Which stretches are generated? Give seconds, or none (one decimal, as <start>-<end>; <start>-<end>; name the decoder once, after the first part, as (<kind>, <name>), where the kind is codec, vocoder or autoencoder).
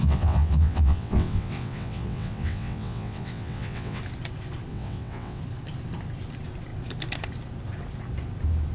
0.0-4.0 (vocoder, WaveNeXt); 4.7-5.4